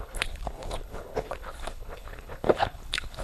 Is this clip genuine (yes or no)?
no